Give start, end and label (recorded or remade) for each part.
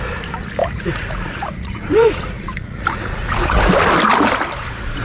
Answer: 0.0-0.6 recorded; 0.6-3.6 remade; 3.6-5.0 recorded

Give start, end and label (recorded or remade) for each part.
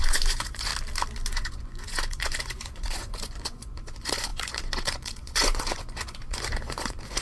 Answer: 0.0-0.7 remade; 0.7-1.3 recorded; 1.3-7.2 remade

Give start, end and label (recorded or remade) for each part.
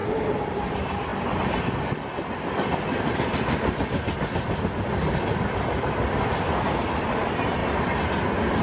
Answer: 0.0-7.6 remade; 7.6-8.6 recorded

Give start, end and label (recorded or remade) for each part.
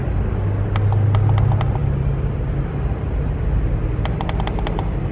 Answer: 0.0-5.1 recorded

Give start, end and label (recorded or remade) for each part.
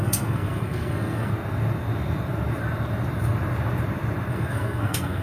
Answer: 0.0-1.3 remade; 1.3-4.3 recorded; 4.3-5.2 remade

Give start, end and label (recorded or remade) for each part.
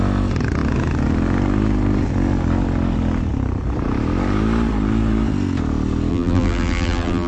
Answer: 0.0-6.1 recorded; 6.1-7.3 remade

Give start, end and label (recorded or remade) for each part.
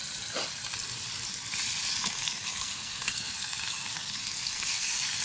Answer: 0.0-2.0 recorded; 2.0-5.2 remade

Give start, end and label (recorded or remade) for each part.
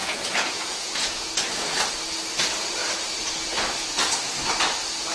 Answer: 0.0-1.3 remade; 1.3-5.1 recorded